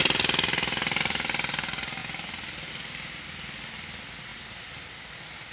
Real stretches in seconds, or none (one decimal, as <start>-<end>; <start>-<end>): 0.0-5.5